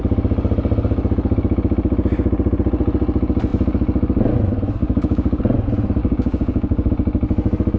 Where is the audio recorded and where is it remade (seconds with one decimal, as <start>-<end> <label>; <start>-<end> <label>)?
0.0-4.8 recorded; 4.8-5.4 remade; 5.4-6.0 recorded; 6.0-6.9 remade; 6.9-7.8 recorded